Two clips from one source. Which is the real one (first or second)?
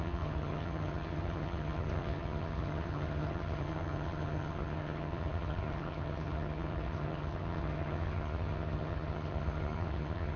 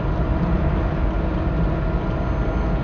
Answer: second